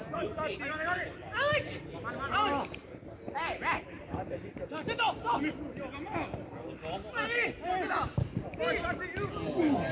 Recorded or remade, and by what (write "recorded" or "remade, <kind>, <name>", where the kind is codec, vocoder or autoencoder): recorded